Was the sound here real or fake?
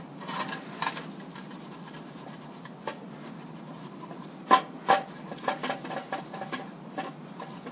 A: real